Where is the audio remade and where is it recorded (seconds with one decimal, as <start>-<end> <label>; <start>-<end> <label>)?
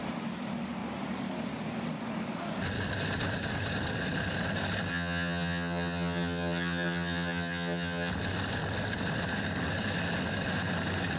0.0-4.9 recorded; 4.9-8.1 remade; 8.1-11.2 recorded